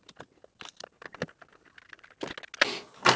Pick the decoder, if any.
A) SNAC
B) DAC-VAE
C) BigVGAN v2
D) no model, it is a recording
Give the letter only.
D